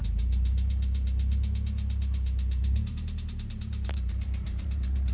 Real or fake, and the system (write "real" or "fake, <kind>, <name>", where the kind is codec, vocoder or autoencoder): fake, vocoder, BigVGAN v2